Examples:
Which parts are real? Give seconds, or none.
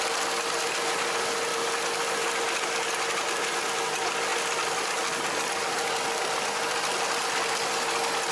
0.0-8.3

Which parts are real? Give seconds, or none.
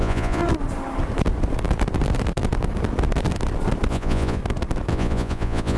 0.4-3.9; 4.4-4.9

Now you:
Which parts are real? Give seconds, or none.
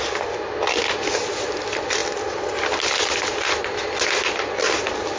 0.0-5.2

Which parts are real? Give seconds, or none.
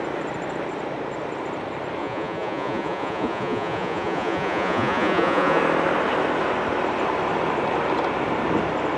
0.0-2.0; 5.6-9.0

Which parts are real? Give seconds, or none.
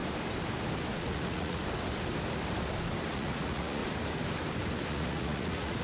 0.0-0.9; 1.6-3.1; 3.8-4.9